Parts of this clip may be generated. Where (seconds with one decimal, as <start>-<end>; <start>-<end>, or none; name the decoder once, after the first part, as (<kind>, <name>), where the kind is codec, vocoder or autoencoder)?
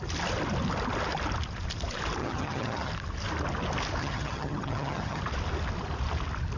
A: 2.2-2.9 (vocoder, HiFi-GAN); 4.0-5.2